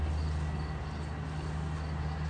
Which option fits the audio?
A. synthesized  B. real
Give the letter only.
B